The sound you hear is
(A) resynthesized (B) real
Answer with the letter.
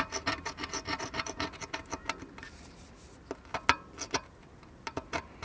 B